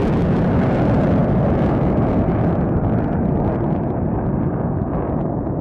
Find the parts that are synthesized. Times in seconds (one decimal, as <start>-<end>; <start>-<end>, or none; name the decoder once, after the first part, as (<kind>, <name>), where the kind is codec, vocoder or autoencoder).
none